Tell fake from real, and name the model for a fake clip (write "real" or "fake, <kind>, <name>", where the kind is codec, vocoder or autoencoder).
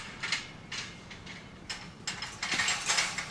real